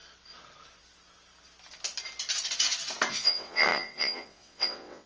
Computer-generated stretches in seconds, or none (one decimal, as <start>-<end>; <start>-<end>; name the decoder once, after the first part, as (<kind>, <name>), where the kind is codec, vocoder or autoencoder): 3.1-5.1 (vocoder, WaveNeXt)